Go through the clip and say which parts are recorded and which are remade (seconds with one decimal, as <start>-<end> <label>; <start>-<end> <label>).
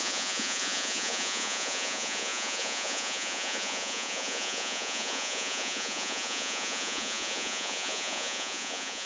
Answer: 0.0-9.1 remade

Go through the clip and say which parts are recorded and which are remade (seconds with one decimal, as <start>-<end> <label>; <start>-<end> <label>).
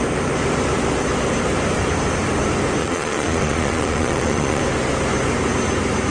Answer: 0.0-2.8 recorded; 2.8-4.6 remade; 4.6-6.1 recorded